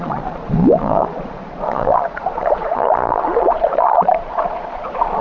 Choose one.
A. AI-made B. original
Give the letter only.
A